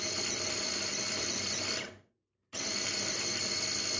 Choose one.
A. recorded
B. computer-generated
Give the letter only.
A